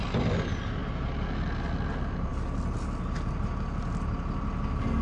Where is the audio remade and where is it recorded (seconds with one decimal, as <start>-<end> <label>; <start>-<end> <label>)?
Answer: 0.0-5.0 recorded